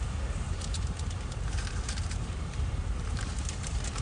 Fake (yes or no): yes